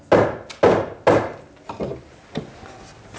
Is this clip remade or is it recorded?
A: recorded